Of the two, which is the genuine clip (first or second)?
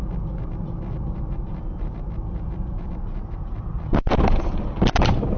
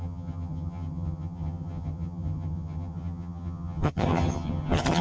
first